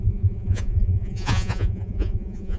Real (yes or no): no